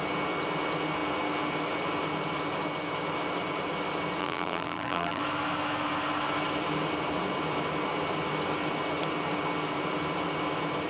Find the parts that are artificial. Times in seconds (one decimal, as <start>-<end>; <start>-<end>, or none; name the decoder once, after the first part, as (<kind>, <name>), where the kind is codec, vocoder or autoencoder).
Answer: 4.2-5.2 (vocoder, BigVGAN v2)